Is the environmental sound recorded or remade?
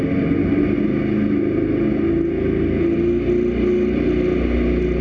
recorded